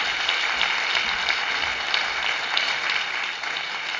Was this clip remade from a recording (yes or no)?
no